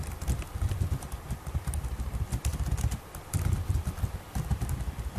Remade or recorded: recorded